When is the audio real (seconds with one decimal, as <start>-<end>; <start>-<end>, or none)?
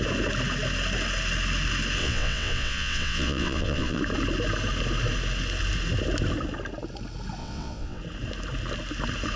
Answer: 0.0-2.0; 4.0-7.4; 8.0-9.4